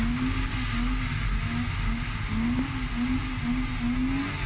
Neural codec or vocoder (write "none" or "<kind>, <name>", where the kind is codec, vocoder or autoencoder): none